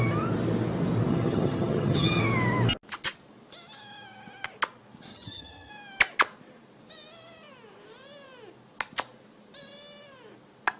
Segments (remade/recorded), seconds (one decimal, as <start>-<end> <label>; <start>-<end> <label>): 0.0-1.1 recorded; 1.1-2.2 remade; 2.2-5.1 recorded; 5.1-5.7 remade; 5.7-10.8 recorded